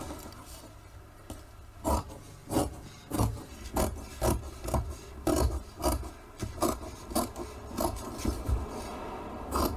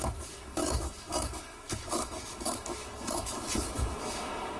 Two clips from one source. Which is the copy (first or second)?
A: second